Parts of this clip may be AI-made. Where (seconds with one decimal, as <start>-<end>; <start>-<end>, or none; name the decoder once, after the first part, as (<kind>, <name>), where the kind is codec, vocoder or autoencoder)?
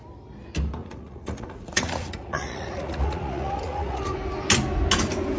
0.8-4.0 (vocoder, Vocos)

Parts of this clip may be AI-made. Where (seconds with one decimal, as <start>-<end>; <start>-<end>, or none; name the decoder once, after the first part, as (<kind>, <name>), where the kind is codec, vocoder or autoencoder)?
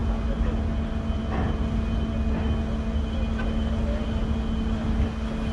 none